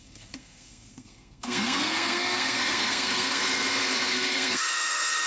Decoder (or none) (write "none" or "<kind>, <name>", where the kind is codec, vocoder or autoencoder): codec, SNAC